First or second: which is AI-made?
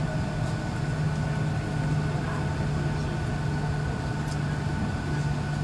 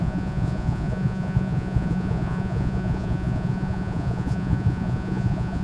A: second